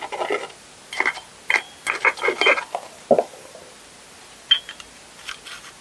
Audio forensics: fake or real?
real